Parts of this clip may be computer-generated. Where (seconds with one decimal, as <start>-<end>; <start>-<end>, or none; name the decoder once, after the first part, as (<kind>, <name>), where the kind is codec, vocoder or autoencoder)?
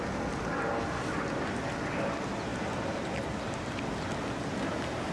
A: none